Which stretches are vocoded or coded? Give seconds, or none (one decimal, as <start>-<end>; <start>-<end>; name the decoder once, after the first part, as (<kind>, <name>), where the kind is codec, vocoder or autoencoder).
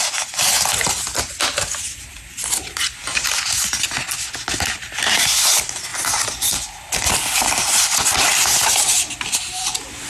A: none